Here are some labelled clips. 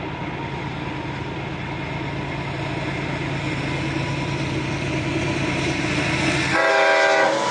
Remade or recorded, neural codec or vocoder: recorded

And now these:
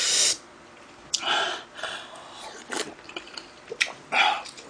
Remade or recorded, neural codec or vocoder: remade, vocoder, BigVGAN v2